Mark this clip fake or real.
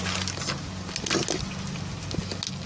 real